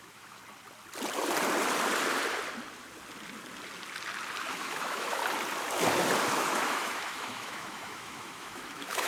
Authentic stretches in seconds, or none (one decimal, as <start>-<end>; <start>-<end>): 0.4-4.5; 5.2-6.3